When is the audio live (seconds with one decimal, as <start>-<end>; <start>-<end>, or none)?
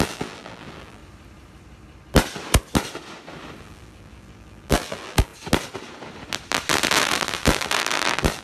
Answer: 1.0-3.6; 5.3-7.0